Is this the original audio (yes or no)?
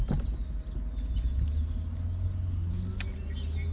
yes